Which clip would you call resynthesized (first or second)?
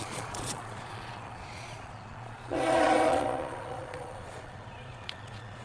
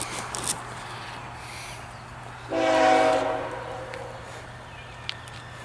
first